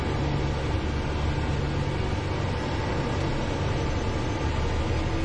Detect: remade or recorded recorded